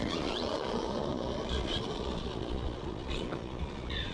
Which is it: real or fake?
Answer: fake